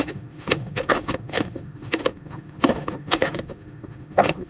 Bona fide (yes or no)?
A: no